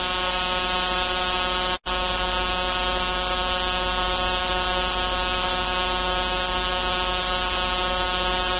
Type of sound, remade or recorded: recorded